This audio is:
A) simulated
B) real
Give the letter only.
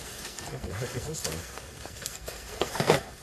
A